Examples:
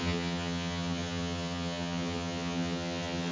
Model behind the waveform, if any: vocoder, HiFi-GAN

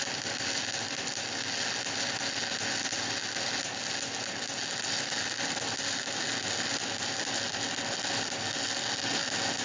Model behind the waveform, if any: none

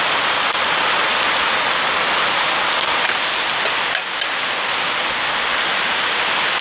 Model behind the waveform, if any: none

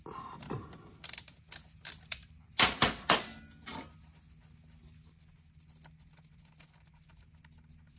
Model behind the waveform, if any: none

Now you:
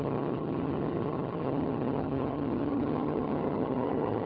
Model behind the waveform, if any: vocoder, HiFi-GAN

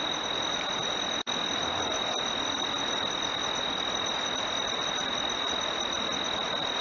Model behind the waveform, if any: none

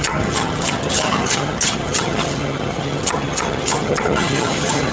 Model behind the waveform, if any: vocoder, HiFi-GAN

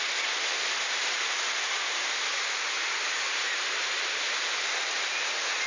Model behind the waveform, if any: none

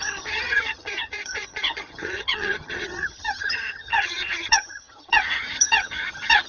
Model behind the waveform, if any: vocoder, HiFi-GAN